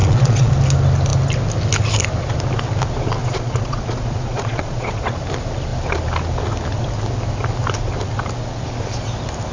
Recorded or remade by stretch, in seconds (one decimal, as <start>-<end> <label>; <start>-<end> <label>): 0.0-0.5 remade; 0.5-3.2 recorded; 3.2-5.2 remade; 5.2-9.5 recorded